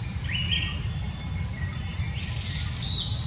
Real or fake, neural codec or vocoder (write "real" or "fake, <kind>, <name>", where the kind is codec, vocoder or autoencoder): real